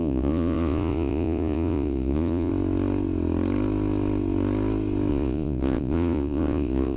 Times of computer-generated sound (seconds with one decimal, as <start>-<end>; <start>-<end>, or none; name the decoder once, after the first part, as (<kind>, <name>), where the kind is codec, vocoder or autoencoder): 0.0-2.5 (vocoder, Vocos); 5.1-7.0